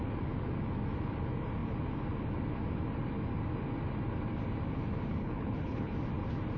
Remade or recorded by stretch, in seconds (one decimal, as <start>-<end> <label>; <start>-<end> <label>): 0.0-5.1 recorded; 5.1-5.9 remade; 5.9-6.6 recorded